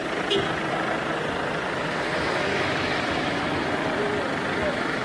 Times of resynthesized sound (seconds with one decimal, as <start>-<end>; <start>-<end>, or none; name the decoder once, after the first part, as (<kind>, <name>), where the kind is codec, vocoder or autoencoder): 2.2-3.8 (autoencoder, DAC-VAE); 4.6-5.0